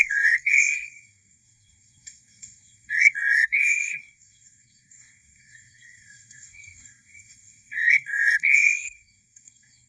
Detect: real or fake fake